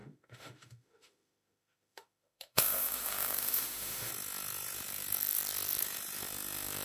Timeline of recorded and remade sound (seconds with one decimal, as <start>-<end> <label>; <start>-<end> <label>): 0.0-4.1 remade; 4.1-6.8 recorded